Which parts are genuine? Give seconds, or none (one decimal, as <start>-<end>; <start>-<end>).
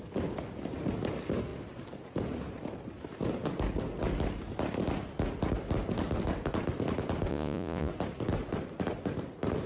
0.0-7.3; 7.9-9.7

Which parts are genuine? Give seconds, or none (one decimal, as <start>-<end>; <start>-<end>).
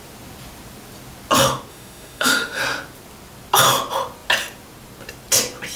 0.0-1.7; 2.6-5.8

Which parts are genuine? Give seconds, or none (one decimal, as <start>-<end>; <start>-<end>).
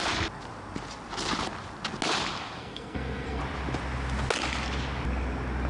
0.0-2.6; 3.4-5.7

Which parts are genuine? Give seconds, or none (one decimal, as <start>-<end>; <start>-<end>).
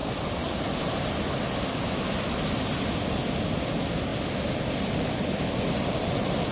0.0-6.5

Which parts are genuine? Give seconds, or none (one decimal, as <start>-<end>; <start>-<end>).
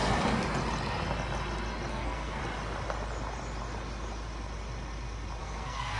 0.0-1.9; 2.4-5.4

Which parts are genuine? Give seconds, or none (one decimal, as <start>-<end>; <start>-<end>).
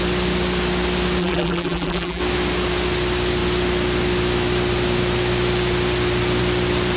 0.0-1.2; 2.2-7.0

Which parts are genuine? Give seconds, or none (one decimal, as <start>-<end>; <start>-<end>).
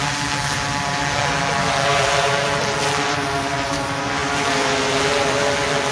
0.0-1.9; 2.7-4.2; 5.0-5.9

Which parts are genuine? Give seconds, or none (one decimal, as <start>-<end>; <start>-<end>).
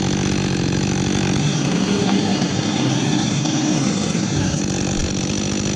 0.0-1.4; 4.6-5.8